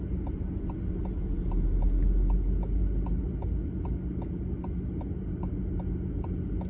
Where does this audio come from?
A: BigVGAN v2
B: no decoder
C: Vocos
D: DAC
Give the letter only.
B